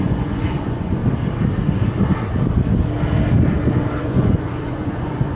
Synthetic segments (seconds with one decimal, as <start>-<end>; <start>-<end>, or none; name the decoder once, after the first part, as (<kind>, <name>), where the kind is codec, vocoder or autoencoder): 0.0-1.0 (vocoder, Vocos); 4.0-5.4